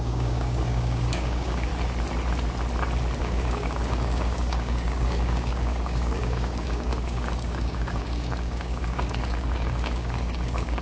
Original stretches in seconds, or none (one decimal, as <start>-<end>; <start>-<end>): 1.7-3.2